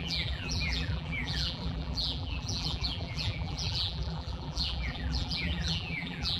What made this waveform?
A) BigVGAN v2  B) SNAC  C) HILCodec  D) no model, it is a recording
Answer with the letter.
A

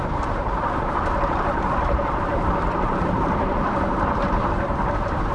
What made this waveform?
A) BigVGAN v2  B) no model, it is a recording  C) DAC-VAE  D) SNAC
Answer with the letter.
A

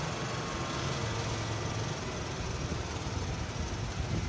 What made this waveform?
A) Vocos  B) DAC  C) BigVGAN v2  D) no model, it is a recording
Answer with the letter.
D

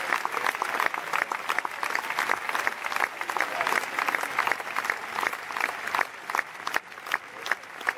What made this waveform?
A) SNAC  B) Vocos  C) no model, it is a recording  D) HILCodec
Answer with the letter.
C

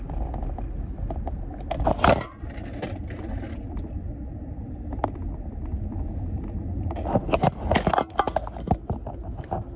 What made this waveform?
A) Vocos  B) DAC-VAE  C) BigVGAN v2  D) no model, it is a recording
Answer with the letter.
D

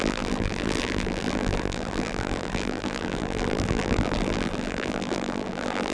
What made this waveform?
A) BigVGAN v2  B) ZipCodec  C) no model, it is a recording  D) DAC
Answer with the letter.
A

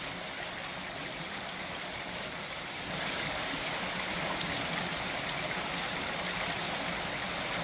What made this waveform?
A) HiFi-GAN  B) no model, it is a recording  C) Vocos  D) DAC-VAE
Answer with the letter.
B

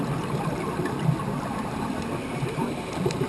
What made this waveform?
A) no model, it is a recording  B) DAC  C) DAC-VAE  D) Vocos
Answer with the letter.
A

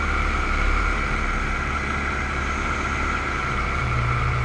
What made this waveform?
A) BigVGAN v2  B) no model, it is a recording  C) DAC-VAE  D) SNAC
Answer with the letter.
A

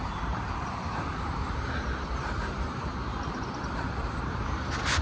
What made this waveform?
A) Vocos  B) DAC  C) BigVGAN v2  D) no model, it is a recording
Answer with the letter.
C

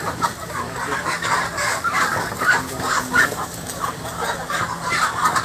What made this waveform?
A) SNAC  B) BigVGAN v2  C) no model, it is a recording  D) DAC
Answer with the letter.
D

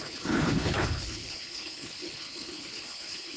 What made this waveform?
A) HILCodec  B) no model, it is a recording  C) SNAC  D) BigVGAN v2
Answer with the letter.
A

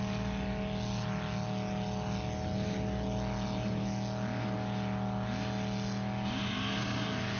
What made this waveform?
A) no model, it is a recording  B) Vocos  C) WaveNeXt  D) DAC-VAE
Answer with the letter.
A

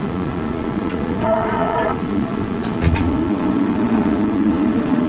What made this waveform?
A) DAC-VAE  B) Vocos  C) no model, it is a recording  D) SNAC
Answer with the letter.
B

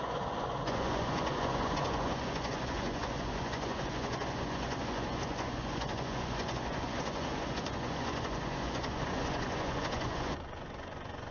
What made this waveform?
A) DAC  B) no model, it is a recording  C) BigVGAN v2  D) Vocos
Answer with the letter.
D